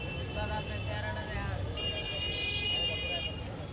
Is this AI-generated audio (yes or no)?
no